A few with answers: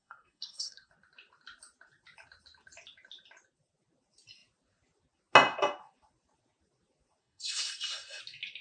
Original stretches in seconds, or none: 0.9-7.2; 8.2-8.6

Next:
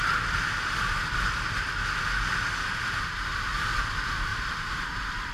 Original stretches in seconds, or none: 0.0-4.3

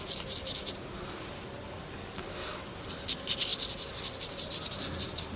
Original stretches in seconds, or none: 0.0-5.4

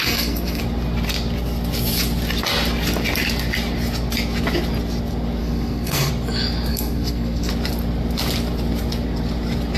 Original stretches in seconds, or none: 0.6-5.4; 6.1-6.7; 7.5-9.8

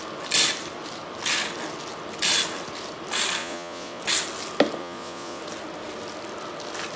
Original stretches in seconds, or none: 0.0-3.4; 4.0-4.8; 5.4-7.0

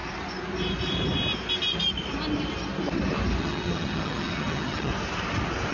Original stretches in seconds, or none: 0.0-3.4; 4.9-5.7

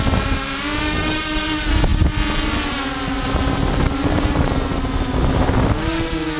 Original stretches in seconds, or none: 0.0-6.4